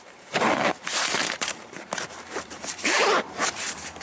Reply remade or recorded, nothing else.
remade